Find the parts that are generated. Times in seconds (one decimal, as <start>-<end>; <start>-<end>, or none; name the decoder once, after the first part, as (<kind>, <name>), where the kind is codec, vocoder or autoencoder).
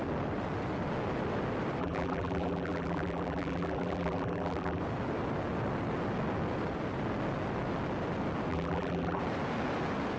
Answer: 1.8-4.8 (vocoder, BigVGAN v2); 8.5-9.2